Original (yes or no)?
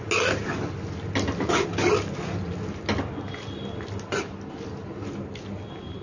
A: yes